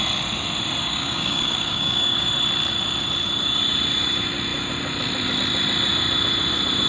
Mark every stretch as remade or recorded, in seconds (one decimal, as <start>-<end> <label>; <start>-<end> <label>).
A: 0.0-0.8 recorded; 0.8-2.3 remade; 2.3-6.9 recorded